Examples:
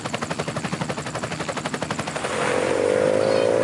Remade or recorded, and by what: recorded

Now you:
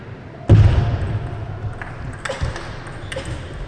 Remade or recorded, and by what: recorded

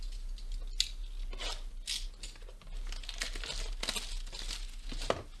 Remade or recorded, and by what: recorded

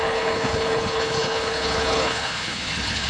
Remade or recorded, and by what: remade, codec, HILCodec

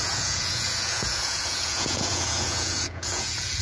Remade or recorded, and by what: remade, vocoder, Vocos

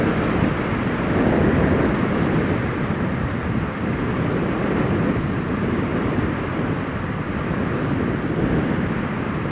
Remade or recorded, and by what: remade, vocoder, BigVGAN v2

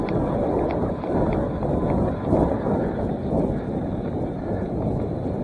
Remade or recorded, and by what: recorded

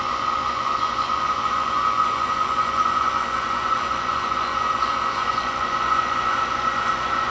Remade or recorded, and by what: remade, vocoder, Vocos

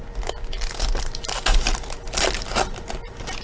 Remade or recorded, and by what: recorded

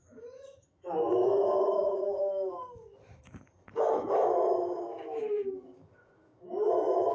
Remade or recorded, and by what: remade, autoencoder, DAC-VAE